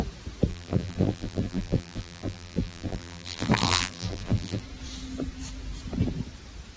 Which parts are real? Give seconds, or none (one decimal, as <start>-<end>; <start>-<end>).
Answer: 0.0-0.5; 4.6-6.8